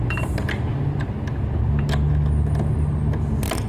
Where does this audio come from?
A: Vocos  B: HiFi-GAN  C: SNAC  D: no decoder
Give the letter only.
D